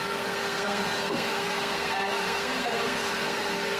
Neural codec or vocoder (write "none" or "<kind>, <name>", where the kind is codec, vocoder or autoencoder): codec, SNAC